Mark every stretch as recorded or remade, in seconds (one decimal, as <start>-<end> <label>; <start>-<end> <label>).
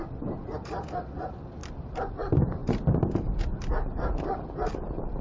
0.0-5.2 recorded